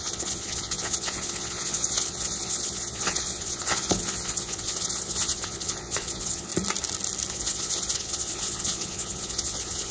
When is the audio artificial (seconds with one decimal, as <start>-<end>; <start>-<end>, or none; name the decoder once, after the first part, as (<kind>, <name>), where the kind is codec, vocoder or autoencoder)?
0.0-6.5 (vocoder, Vocos); 7.3-9.9